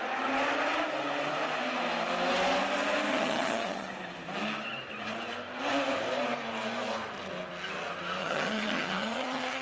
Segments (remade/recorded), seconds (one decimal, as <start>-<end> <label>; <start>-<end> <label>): 0.0-3.1 recorded; 3.1-3.9 remade; 3.9-8.2 recorded; 8.2-9.6 remade